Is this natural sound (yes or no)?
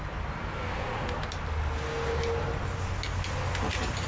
yes